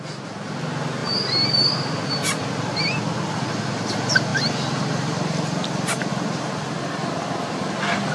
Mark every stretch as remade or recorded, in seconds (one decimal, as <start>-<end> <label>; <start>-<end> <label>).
0.0-8.1 recorded